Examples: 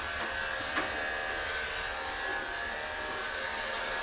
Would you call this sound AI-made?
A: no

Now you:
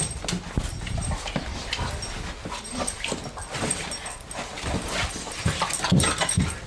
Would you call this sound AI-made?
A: no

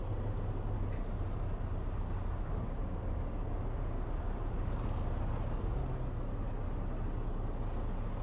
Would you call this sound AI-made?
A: no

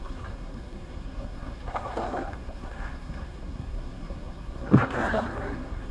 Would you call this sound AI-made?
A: yes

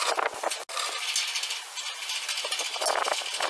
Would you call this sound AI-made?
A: no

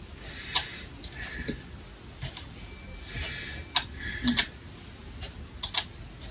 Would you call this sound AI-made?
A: no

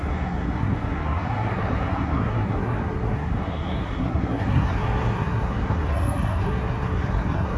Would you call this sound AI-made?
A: yes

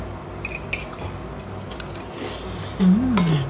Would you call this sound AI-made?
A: no